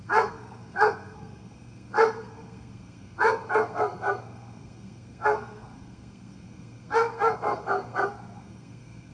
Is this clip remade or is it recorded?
remade